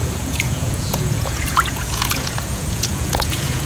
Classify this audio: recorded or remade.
remade